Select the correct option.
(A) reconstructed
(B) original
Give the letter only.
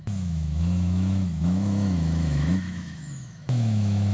A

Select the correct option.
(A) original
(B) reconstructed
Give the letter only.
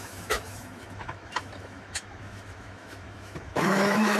B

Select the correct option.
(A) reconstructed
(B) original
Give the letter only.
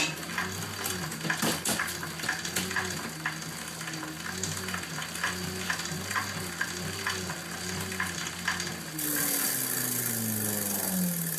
B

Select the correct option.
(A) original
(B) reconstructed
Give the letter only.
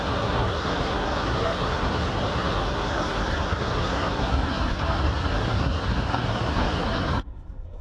B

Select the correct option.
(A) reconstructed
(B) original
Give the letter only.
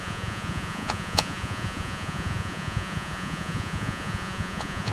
A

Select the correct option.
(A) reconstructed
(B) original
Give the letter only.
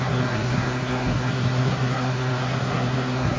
A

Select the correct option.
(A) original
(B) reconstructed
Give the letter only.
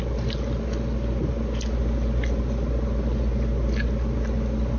A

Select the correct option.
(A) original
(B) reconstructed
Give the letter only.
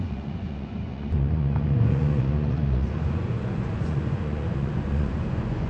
B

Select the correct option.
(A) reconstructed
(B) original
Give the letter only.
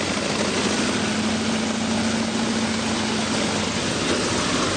B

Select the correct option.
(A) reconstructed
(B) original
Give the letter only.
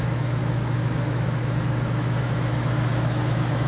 A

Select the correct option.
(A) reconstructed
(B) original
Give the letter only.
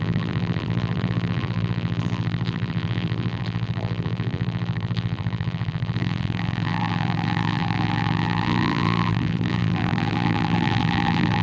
A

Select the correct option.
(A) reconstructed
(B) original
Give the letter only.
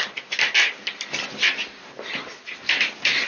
B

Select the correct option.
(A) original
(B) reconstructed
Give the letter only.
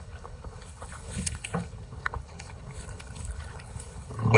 B